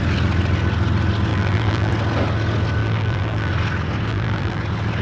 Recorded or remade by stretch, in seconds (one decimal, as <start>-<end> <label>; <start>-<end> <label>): 0.0-1.3 recorded; 1.3-1.9 remade; 1.9-2.8 recorded; 2.8-3.5 remade; 3.5-4.1 recorded; 4.1-4.6 remade; 4.6-5.0 recorded